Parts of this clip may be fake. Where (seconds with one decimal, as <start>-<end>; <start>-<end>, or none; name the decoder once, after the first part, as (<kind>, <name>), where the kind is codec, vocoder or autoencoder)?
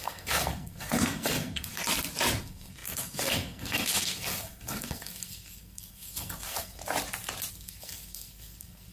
0.0-1.8 (codec, SNAC); 2.4-6.8; 7.5-8.9